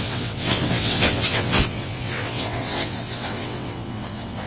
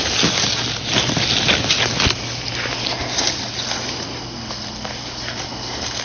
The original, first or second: second